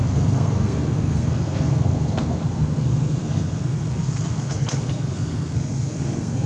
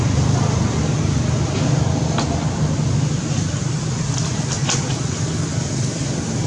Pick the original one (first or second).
second